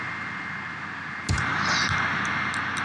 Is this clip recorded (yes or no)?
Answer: yes